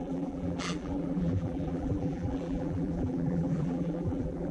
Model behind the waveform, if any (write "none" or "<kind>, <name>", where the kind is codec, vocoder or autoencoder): vocoder, BigVGAN v2